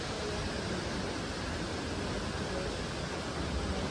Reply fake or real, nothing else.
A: real